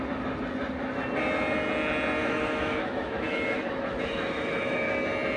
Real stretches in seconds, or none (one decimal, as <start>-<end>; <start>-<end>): 0.0-2.2; 4.9-5.4